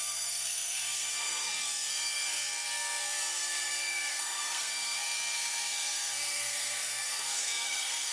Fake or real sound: fake